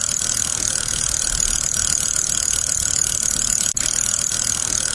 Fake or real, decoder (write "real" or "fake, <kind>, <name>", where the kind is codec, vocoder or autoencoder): real